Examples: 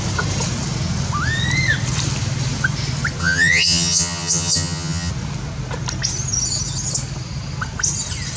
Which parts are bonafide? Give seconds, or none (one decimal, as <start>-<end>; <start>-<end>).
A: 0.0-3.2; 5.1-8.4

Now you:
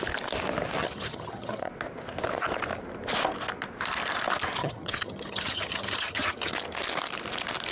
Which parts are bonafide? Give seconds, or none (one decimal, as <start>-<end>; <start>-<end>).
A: 0.0-0.8; 1.7-4.6; 6.5-7.7

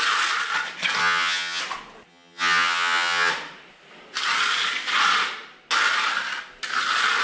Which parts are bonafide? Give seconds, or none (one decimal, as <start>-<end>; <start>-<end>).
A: 0.0-1.0; 1.6-2.1; 3.3-7.2

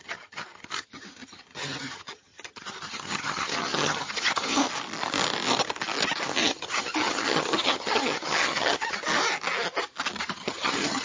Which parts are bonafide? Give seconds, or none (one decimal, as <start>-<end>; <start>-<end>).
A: 4.6-6.4; 9.0-10.3